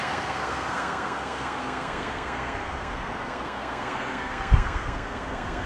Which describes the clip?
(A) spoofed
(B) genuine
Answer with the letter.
A